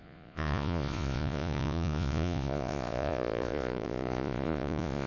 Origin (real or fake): fake